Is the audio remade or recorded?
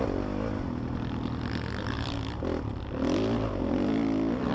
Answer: recorded